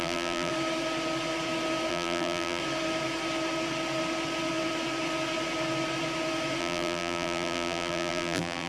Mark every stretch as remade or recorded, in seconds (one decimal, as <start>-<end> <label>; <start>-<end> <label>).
0.0-0.5 remade; 0.5-1.9 recorded; 1.9-2.6 remade; 2.6-6.6 recorded; 6.6-8.7 remade